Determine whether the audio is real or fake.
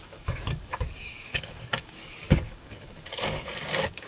fake